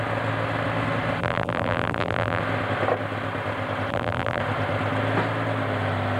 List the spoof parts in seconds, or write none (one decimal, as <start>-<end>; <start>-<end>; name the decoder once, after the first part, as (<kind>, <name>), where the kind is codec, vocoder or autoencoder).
1.2-2.4 (vocoder, BigVGAN v2); 3.9-4.4